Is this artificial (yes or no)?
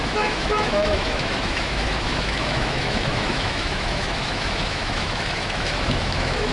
yes